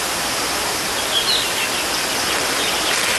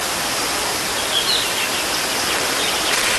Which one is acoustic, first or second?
first